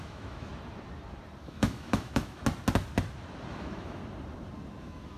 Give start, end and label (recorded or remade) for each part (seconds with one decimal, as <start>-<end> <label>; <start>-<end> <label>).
0.0-0.5 remade; 0.5-1.4 recorded; 1.4-2.4 remade; 2.4-3.5 recorded; 3.5-4.0 remade; 4.0-4.8 recorded; 4.8-5.2 remade